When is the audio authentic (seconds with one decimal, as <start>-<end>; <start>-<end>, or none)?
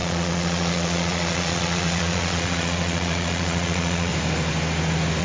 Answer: 4.1-5.2